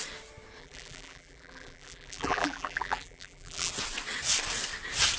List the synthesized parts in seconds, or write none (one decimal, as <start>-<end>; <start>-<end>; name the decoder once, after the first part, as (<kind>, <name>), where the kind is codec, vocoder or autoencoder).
0.6-3.7 (vocoder, BigVGAN v2)